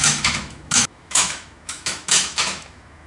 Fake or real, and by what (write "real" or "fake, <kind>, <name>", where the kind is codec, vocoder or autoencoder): fake, autoencoder, DAC-VAE